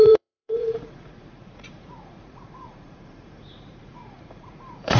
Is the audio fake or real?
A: fake